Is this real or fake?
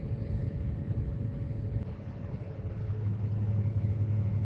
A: fake